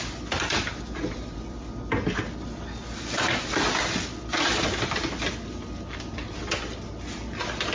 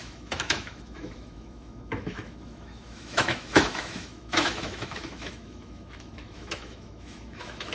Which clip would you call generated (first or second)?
second